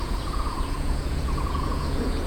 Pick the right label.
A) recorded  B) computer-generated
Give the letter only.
B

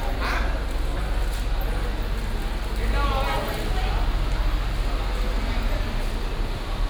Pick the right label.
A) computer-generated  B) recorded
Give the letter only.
B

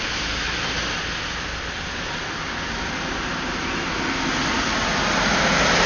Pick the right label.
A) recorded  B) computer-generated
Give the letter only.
A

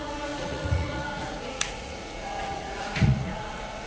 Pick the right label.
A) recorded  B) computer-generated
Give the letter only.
B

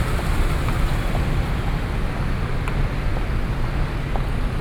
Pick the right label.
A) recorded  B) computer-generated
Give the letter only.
A